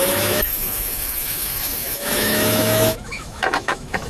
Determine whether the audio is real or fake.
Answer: fake